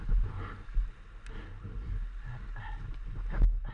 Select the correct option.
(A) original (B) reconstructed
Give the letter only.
A